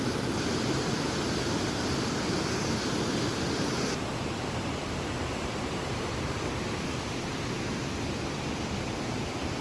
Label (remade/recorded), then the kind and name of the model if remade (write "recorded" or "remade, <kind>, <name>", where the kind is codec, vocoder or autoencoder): recorded